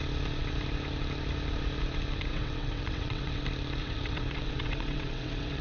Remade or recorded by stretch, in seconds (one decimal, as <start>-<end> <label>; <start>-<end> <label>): 0.0-2.3 recorded; 2.3-3.4 remade; 3.4-3.8 recorded; 3.8-5.6 remade